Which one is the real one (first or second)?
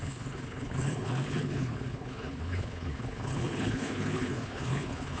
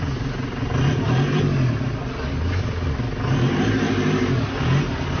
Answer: second